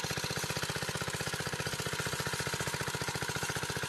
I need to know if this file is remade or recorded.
recorded